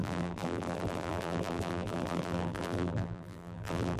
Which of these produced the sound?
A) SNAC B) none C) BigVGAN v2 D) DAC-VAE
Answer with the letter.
C